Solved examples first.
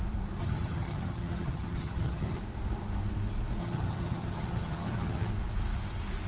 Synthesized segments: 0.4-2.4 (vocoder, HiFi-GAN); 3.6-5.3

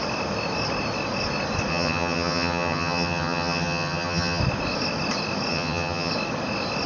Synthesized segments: 1.7-4.4 (vocoder, HiFi-GAN); 5.5-6.1

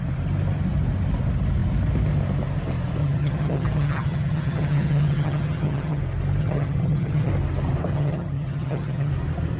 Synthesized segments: 3.0-6.0 (vocoder, HiFi-GAN); 6.4-7.3; 7.9-9.1

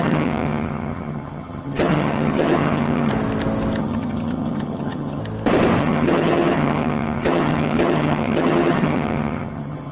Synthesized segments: 0.0-3.1 (vocoder, HiFi-GAN); 3.8-5.2; 5.8-9.9

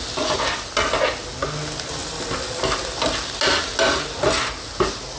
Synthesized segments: none

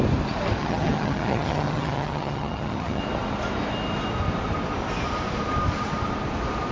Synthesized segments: 0.6-3.0 (vocoder, HiFi-GAN)